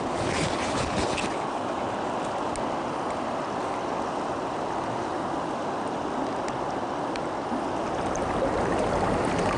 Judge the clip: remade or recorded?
recorded